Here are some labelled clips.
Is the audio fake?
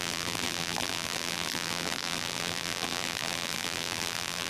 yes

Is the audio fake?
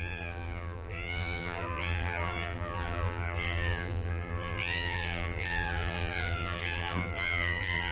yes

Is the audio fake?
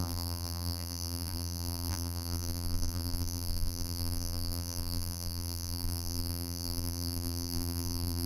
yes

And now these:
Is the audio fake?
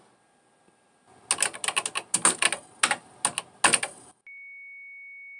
no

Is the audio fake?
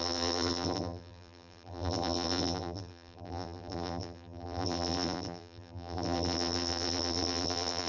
yes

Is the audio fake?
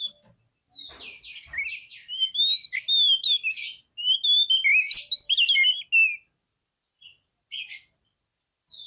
no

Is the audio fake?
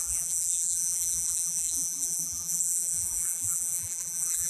yes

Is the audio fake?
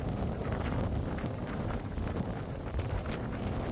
yes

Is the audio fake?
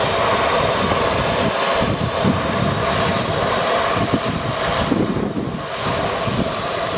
no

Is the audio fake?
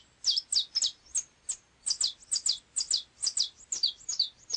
no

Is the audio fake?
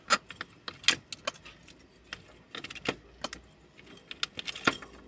no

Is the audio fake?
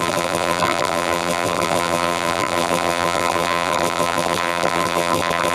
yes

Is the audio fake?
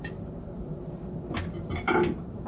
yes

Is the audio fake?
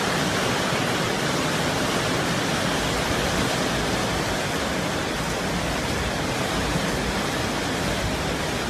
no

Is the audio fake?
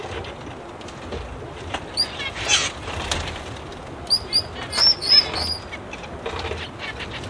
no